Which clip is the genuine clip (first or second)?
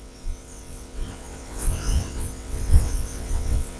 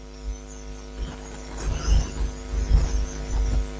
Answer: second